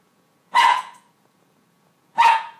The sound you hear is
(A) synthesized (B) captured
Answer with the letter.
A